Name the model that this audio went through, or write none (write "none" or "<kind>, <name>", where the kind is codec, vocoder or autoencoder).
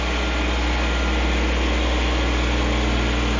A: none